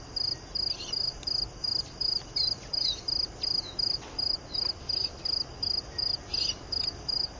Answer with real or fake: real